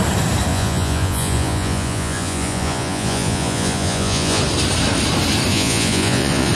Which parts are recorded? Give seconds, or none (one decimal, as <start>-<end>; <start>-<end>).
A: 0.0-0.5; 4.4-5.5